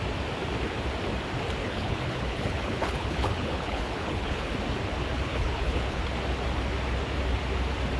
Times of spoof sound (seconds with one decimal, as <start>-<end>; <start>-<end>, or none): 1.6-4.5; 5.3-6.0